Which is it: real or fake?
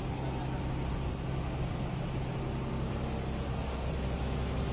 real